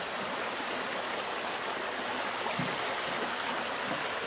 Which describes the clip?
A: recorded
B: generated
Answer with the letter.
A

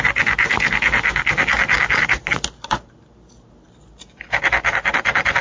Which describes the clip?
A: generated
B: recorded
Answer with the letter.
B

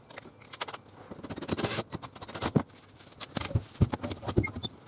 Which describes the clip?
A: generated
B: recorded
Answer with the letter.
B